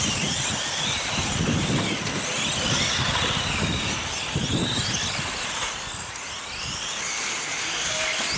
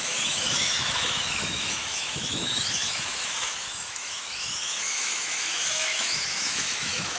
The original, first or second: first